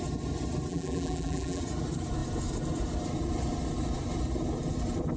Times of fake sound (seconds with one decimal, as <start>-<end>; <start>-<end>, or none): 0.7-1.6